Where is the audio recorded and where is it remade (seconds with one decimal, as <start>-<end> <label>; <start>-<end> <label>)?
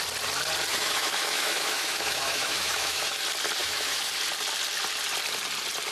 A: 0.0-0.7 recorded; 0.7-3.2 remade; 3.2-3.6 recorded; 3.6-4.1 remade; 4.1-5.9 recorded